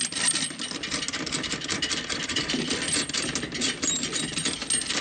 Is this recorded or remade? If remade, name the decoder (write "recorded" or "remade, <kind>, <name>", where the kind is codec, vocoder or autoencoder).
recorded